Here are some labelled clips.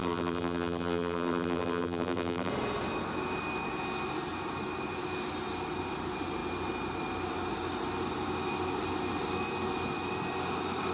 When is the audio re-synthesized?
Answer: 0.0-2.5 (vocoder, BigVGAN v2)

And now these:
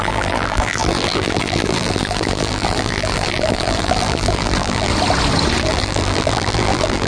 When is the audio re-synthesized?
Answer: 0.0-4.9 (vocoder, BigVGAN v2); 5.6-7.1

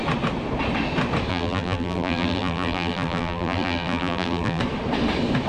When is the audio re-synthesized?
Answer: 1.3-4.6 (vocoder, BigVGAN v2)

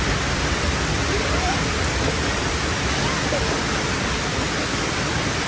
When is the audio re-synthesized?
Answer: 2.3-2.9 (vocoder, BigVGAN v2)

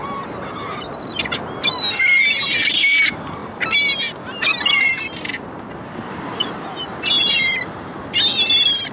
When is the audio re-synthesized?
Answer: none

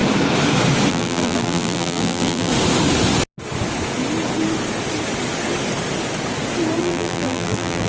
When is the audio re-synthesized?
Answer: 0.9-2.5 (vocoder, BigVGAN v2); 6.8-7.9

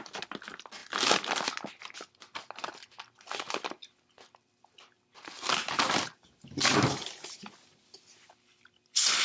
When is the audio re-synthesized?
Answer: none

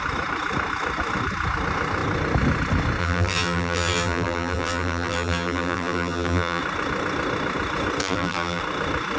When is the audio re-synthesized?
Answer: 3.0-6.6 (vocoder, BigVGAN v2); 8.0-8.6